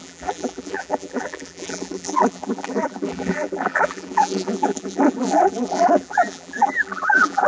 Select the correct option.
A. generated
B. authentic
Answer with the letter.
A